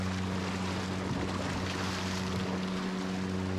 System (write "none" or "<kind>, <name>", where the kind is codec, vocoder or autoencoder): none